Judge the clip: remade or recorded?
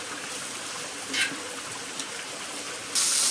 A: recorded